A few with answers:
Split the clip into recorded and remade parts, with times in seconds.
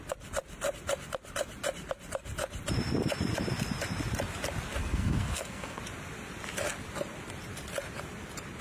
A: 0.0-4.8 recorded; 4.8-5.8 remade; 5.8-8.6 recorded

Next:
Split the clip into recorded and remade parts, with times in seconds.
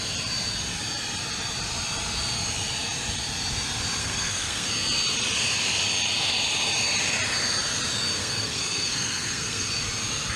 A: 0.0-4.0 recorded; 4.0-4.7 remade; 4.7-8.2 recorded; 8.2-9.7 remade; 9.7-10.4 recorded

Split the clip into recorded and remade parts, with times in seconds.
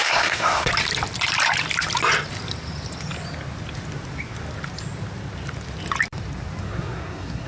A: 0.0-0.7 remade; 0.7-6.6 recorded; 6.6-7.5 remade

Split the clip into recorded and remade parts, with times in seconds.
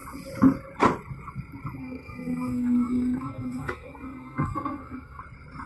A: 0.0-1.8 recorded; 1.8-5.2 remade; 5.2-5.7 recorded